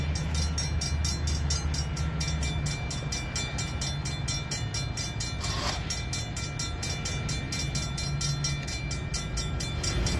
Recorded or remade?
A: recorded